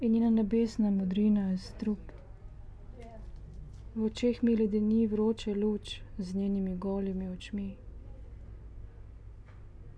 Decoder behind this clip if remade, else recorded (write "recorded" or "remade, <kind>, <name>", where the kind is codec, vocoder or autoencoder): recorded